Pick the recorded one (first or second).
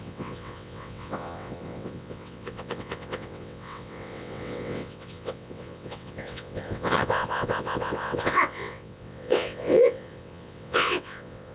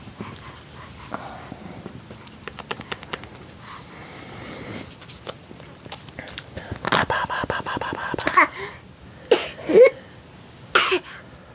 second